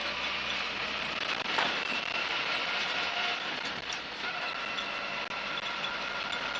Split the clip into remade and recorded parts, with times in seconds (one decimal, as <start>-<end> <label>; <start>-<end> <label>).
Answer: 0.0-4.0 remade; 4.0-6.6 recorded